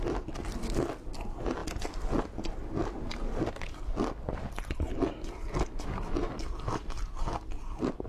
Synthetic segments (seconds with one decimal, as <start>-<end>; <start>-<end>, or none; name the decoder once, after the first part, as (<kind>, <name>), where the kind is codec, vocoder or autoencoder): none